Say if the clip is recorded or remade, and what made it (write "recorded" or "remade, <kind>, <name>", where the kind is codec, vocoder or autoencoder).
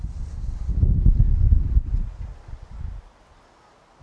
recorded